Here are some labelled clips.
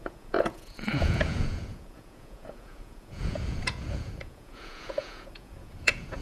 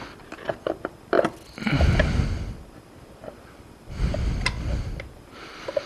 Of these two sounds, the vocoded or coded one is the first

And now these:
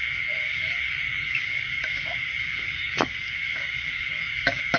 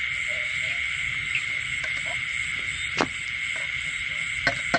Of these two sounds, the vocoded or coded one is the first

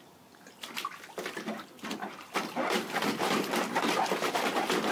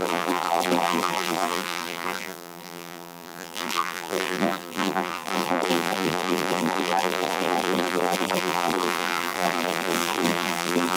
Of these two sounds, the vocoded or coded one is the second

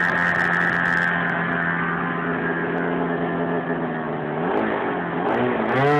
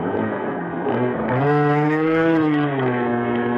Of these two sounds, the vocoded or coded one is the second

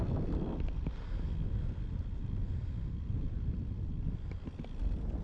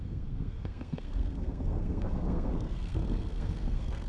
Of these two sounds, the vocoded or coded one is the second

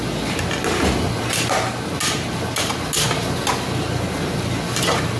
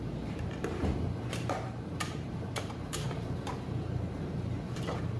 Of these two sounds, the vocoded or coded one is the second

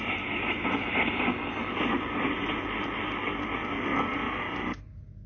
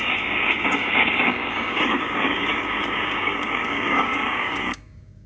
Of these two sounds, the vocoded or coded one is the second